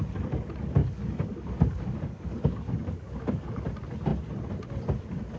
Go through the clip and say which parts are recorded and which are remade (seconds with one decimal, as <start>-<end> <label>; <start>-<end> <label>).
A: 0.0-0.8 recorded; 0.8-3.6 remade; 3.6-5.4 recorded